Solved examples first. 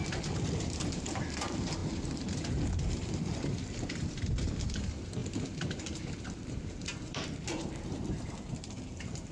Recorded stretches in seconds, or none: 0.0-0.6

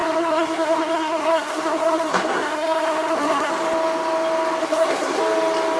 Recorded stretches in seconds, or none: 3.5-4.6; 5.2-5.8

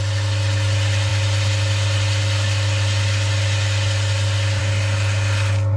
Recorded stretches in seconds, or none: 0.0-5.8

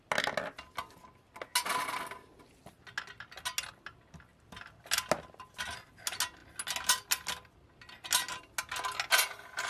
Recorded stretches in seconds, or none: 0.0-9.7